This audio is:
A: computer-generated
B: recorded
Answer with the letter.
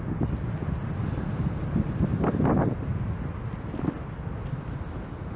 B